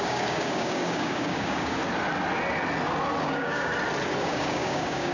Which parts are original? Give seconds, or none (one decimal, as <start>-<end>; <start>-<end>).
1.8-3.2; 3.7-4.2